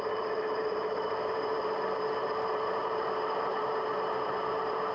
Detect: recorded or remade remade